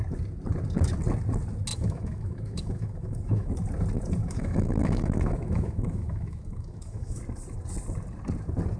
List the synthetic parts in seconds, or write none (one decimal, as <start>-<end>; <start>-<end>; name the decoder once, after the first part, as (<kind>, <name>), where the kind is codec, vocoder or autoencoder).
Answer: 1.7-3.5 (autoencoder, DAC-VAE); 4.2-7.2